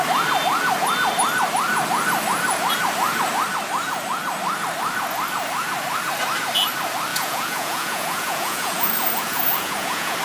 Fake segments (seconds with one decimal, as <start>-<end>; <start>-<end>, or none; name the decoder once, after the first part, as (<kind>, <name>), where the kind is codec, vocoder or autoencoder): 7.1-10.2 (vocoder, Vocos)